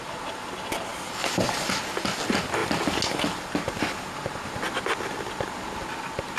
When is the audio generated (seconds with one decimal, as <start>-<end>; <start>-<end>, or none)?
none